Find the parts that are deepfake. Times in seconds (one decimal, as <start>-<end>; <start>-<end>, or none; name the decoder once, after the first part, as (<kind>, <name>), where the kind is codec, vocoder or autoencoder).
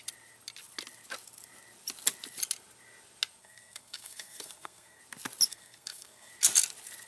3.4-5.0 (codec, SNAC); 5.5-6.3